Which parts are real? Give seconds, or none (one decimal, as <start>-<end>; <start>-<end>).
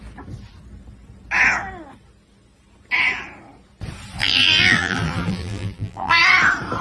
0.0-4.2; 6.2-6.8